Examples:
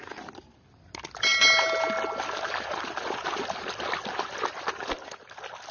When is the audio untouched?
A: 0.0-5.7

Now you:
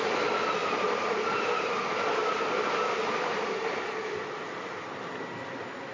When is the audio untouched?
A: 0.0-0.6; 1.8-2.2; 4.8-5.9

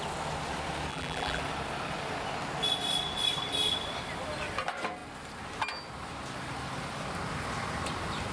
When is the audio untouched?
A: 0.0-0.9; 1.4-8.3

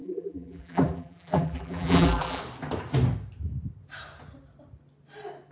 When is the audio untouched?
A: 2.4-5.5